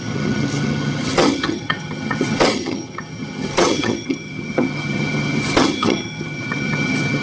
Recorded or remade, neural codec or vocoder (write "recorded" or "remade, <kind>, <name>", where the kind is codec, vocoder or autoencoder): remade, vocoder, HiFi-GAN